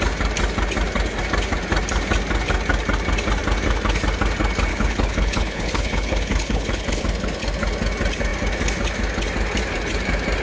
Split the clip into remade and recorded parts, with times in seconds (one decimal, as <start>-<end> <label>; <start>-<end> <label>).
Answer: 0.0-4.7 recorded; 4.7-7.0 remade; 7.0-10.4 recorded